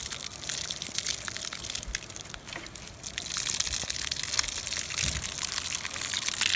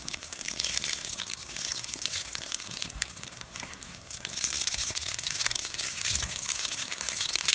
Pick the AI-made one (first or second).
second